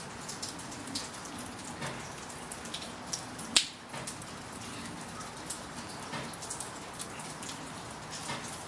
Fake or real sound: real